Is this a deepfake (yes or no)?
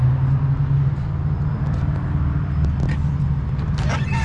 no